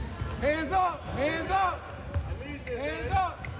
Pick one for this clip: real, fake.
real